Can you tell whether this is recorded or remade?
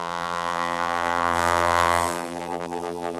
remade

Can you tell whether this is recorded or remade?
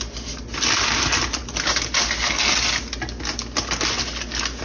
recorded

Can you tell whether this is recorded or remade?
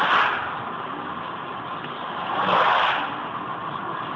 recorded